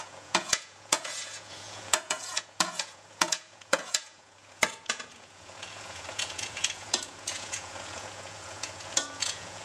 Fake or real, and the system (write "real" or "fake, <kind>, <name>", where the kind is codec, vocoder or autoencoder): fake, vocoder, Vocos